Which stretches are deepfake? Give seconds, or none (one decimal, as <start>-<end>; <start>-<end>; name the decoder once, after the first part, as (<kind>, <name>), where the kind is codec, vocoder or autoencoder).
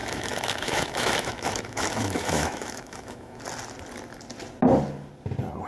0.0-3.4 (autoencoder, DAC-VAE)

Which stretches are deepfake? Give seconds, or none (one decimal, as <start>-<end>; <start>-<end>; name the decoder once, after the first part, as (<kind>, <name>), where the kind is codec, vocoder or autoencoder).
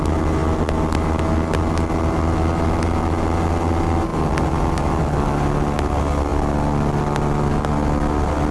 none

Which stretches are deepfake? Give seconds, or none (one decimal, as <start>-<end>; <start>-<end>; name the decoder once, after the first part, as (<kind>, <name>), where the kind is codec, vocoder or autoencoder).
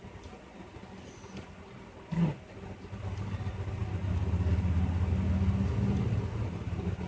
none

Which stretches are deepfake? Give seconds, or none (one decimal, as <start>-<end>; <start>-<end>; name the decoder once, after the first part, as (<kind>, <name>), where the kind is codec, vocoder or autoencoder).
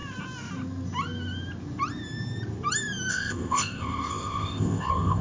3.1-5.2 (codec, ZipCodec)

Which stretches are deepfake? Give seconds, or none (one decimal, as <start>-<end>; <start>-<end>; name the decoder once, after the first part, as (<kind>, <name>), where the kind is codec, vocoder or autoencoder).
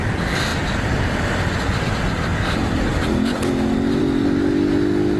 none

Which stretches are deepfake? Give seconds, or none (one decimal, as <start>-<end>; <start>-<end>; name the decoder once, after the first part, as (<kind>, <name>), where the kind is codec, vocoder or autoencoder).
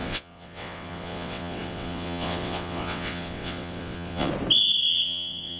0.0-4.3 (vocoder, WaveNeXt); 4.9-5.6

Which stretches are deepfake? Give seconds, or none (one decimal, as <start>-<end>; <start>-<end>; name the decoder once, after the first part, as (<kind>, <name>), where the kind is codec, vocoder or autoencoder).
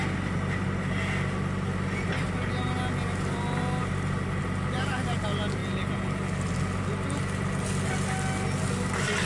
none